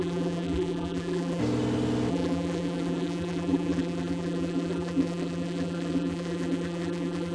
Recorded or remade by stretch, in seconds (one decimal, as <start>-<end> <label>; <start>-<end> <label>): 0.0-1.4 remade; 1.4-2.1 recorded; 2.1-7.3 remade